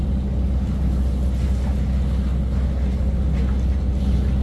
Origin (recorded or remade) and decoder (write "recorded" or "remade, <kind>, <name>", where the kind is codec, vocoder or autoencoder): recorded